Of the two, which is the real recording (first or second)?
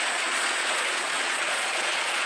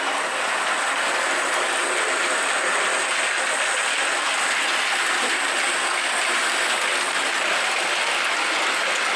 second